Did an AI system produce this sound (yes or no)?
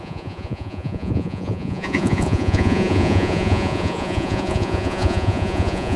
yes